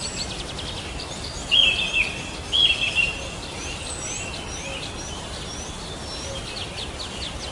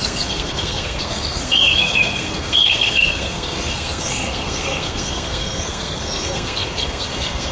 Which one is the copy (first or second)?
second